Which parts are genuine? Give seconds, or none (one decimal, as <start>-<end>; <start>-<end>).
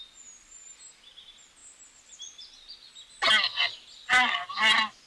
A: 0.0-5.1